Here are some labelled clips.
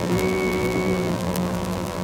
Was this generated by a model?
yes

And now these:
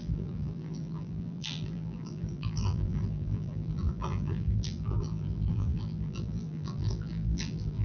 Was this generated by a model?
yes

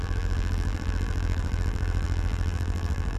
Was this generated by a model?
yes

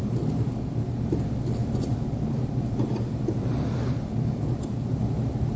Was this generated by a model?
yes